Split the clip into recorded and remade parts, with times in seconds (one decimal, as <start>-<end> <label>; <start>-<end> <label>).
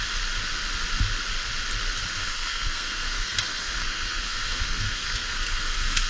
0.0-2.2 recorded; 2.2-6.1 remade